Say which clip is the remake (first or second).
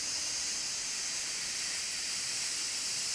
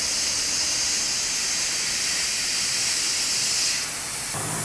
first